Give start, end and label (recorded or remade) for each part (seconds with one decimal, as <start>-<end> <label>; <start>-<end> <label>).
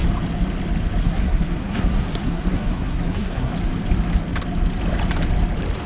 0.0-1.0 recorded; 1.0-3.5 remade; 3.5-5.9 recorded